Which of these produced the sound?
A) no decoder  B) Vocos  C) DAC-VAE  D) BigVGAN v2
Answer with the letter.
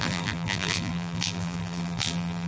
D